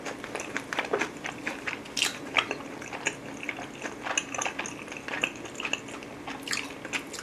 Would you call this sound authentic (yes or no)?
yes